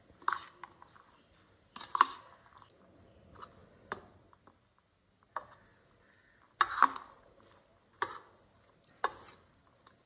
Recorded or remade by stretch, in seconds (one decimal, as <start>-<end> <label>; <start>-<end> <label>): 0.0-10.1 recorded